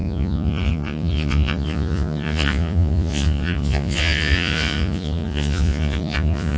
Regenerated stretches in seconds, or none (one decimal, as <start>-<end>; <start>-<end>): 0.0-6.6